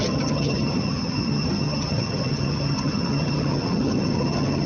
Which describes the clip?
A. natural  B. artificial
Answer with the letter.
B